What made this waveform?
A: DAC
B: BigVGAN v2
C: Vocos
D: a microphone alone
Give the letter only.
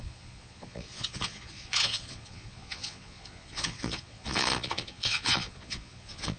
C